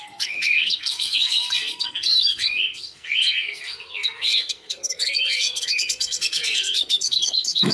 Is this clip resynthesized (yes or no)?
yes